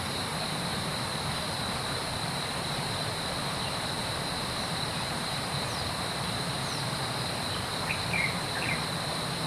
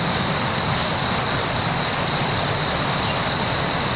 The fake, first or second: first